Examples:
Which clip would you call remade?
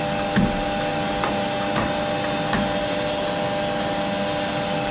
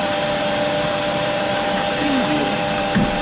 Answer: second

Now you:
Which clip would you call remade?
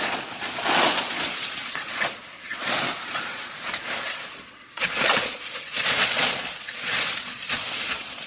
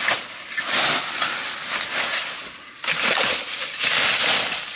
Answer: first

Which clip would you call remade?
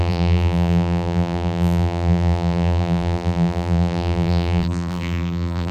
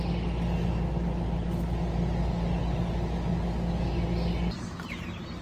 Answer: first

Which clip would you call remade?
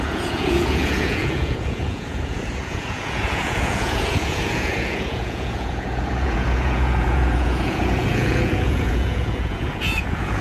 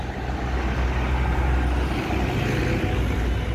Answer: first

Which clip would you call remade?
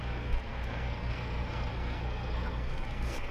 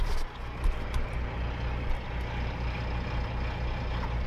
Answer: first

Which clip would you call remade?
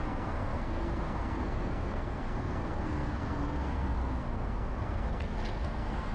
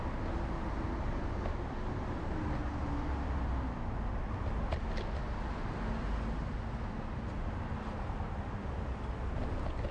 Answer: first